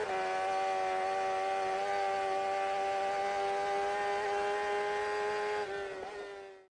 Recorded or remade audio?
recorded